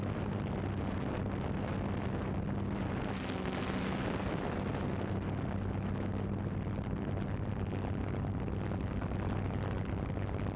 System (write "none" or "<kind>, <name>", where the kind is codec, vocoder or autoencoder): none